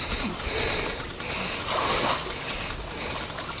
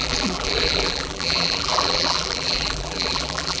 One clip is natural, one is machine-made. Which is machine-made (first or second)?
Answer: second